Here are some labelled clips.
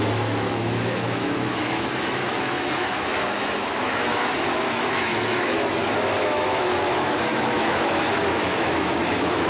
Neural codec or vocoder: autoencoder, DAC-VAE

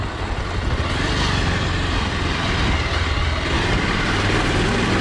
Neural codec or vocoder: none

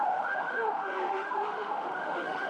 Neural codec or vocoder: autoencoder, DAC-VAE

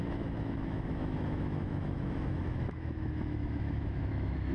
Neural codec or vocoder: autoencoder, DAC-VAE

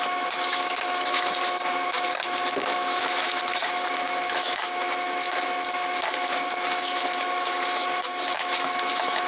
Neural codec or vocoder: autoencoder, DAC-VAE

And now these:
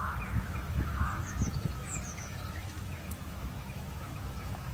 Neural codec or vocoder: autoencoder, DAC-VAE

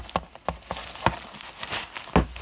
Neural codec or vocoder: none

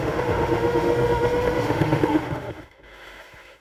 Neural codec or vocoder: autoencoder, DAC-VAE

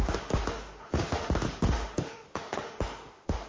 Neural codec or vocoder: autoencoder, DAC-VAE